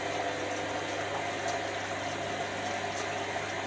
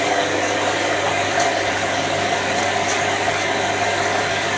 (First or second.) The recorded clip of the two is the first